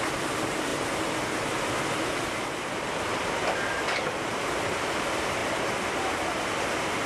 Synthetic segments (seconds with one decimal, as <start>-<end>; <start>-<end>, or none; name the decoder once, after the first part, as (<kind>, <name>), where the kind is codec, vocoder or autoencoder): none